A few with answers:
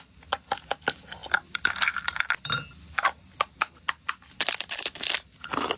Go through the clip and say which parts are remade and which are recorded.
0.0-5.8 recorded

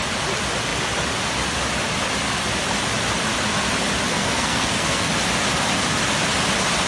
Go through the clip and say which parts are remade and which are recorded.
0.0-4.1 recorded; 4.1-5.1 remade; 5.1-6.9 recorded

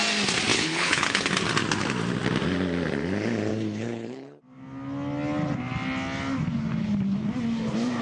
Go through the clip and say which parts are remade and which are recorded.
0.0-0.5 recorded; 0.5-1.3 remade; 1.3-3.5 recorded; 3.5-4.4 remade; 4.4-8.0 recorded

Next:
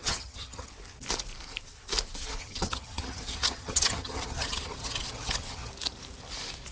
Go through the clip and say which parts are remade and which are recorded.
0.0-0.7 remade; 0.7-2.4 recorded; 2.4-5.7 remade; 5.7-6.7 recorded

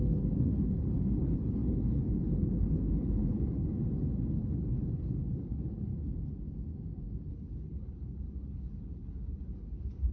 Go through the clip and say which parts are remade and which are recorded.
0.0-3.7 remade; 3.7-4.3 recorded; 4.3-5.9 remade; 5.9-7.3 recorded; 7.3-10.1 remade